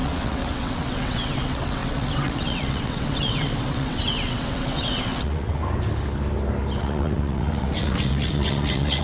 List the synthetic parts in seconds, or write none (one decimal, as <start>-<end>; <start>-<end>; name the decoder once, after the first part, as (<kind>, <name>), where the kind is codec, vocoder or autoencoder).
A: 0.0-5.6 (vocoder, WaveNeXt); 6.8-9.0